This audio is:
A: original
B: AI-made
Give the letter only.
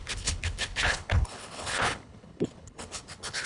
B